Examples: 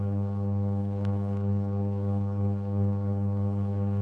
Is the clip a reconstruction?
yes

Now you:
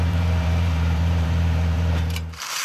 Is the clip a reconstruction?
yes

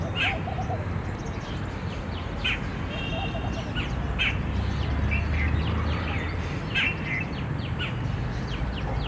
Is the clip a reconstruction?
no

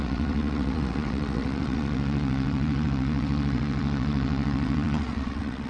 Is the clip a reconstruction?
yes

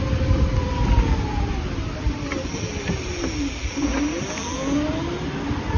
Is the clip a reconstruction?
no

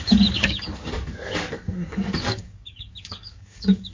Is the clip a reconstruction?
yes